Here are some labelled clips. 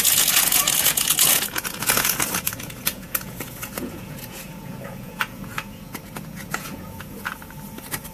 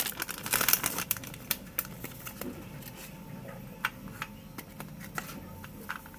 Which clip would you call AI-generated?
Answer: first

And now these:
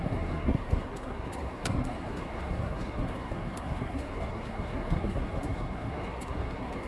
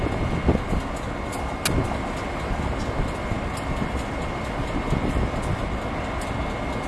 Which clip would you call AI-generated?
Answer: first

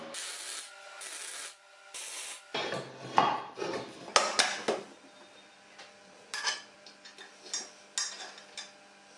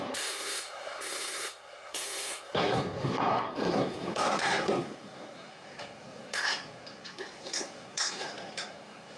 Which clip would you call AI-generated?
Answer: second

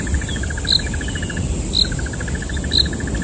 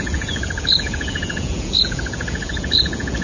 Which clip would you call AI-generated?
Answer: second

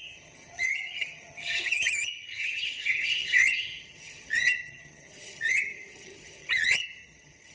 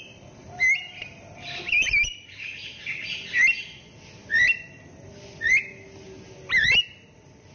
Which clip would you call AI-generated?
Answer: first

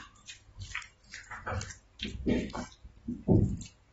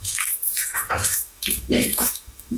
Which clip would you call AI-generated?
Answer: second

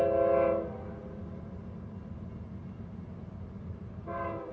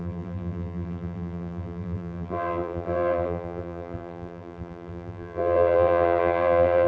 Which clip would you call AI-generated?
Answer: second